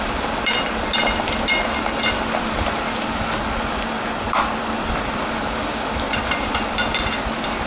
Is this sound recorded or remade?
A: recorded